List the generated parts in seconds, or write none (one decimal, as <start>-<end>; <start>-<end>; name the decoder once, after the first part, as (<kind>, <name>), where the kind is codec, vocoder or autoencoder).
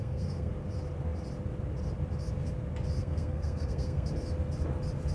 0.0-0.5 (codec, SNAC); 3.0-4.1